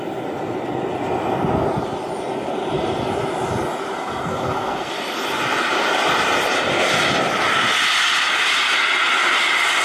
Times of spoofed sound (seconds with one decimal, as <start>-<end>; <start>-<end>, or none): 4.0-4.9